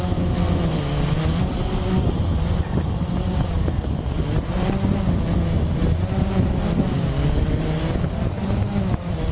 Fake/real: real